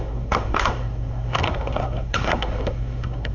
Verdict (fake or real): fake